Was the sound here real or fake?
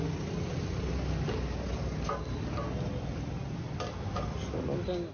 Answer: real